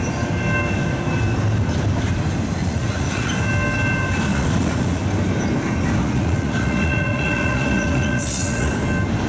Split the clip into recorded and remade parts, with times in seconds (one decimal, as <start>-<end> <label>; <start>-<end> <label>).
0.0-2.6 recorded; 2.6-3.3 remade; 3.3-4.3 recorded; 4.3-5.0 remade; 5.0-6.0 recorded; 6.0-8.7 remade; 8.7-9.3 recorded